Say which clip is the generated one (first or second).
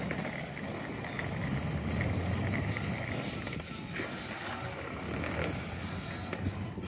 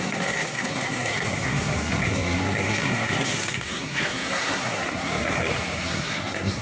second